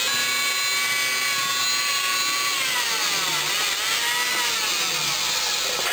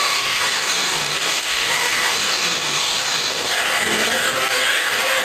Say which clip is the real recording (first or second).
first